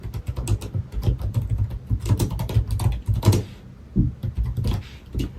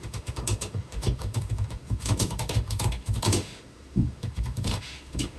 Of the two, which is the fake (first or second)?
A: second